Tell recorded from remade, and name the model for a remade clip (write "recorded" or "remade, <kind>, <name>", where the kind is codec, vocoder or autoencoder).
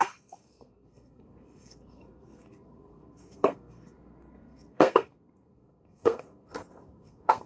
remade, codec, SNAC